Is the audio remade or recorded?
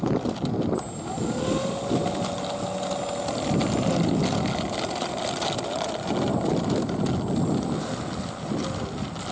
recorded